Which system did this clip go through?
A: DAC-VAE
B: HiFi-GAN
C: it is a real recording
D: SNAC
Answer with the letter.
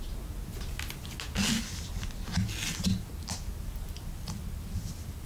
C